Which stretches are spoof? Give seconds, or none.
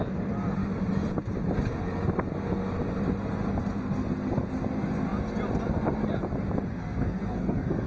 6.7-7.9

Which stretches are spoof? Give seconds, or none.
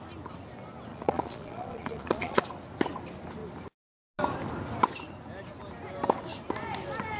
0.9-2.4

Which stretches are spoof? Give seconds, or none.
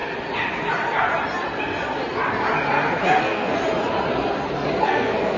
3.2-3.6; 4.8-5.4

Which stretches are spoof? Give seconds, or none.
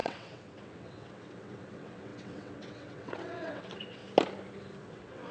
0.0-4.0; 4.8-5.3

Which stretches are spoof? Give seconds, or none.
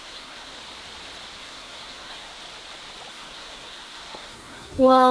0.0-0.5; 1.4-2.3; 3.1-5.1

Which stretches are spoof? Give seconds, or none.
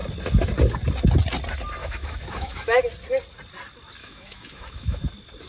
1.8-2.8; 4.0-5.1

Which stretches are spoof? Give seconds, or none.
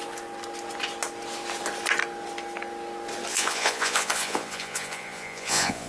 3.3-5.9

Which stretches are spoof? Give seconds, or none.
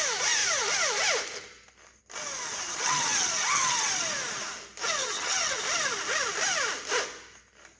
2.7-3.9; 5.0-5.6